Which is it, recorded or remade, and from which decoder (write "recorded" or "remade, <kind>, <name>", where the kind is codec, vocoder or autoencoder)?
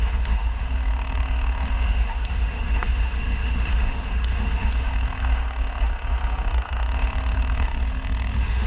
remade, autoencoder, DAC-VAE